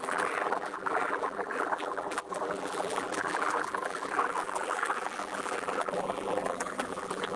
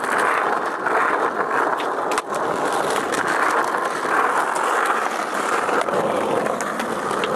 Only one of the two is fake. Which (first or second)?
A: first